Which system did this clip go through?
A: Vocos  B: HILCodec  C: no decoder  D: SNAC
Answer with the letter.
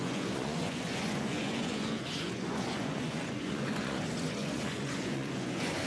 A